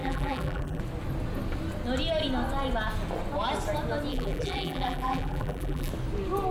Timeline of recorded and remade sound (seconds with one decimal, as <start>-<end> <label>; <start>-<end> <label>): 0.0-0.8 remade; 0.8-4.1 recorded; 4.1-5.9 remade; 5.9-6.5 recorded

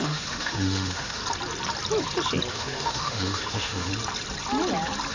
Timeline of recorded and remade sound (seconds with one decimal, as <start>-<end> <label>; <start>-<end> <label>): 0.0-1.2 remade; 1.2-2.5 recorded; 2.5-3.9 remade; 3.9-5.1 recorded

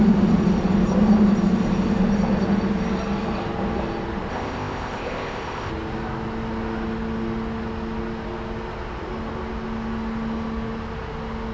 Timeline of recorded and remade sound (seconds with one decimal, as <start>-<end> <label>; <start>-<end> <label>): 0.0-4.3 recorded; 4.3-5.7 remade; 5.7-11.5 recorded

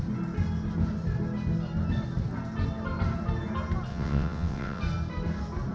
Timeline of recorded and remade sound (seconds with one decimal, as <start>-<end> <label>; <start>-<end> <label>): 0.0-3.9 recorded; 3.9-4.8 remade; 4.8-5.7 recorded

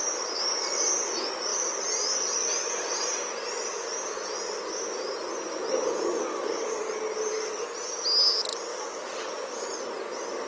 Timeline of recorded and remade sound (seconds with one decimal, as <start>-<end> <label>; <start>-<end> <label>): 0.0-6.3 recorded; 6.3-6.8 remade; 6.8-8.7 recorded; 8.7-9.5 remade; 9.5-10.5 recorded

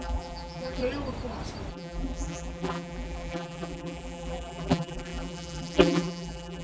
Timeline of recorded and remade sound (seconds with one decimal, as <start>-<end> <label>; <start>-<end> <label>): 0.0-0.8 remade; 0.8-1.7 recorded; 1.7-6.6 remade

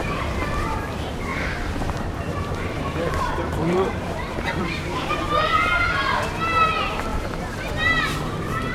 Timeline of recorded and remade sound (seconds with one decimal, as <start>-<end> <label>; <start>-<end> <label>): 0.0-1.3 recorded; 1.3-5.1 remade; 5.1-8.7 recorded

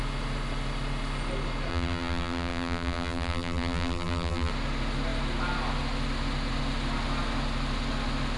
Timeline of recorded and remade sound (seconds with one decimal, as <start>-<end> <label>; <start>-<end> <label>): 0.0-1.7 recorded; 1.7-4.5 remade; 4.5-8.4 recorded